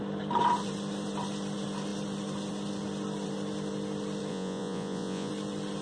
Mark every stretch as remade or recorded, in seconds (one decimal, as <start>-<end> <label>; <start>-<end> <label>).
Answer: 0.0-4.3 recorded; 4.3-5.3 remade; 5.3-5.8 recorded